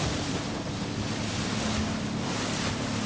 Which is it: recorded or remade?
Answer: recorded